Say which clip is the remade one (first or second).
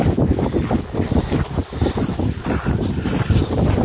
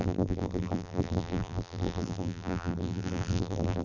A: second